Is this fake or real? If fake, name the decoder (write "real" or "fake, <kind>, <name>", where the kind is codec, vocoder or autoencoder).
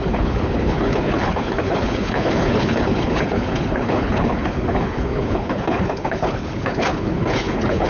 fake, codec, HILCodec